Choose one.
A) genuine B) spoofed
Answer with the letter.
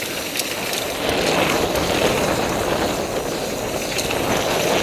A